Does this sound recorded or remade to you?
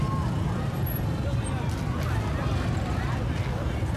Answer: recorded